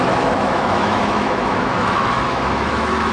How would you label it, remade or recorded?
remade